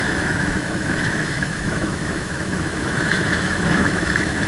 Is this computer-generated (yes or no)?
yes